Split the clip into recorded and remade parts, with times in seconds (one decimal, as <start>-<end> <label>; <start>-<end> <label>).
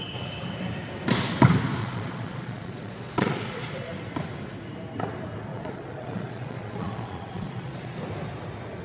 0.0-1.8 recorded; 1.8-3.9 remade; 3.9-5.5 recorded; 5.5-8.0 remade; 8.0-8.8 recorded